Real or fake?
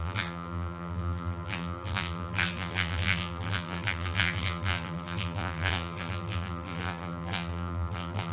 fake